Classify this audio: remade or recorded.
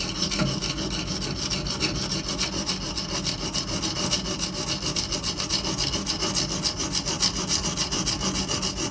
recorded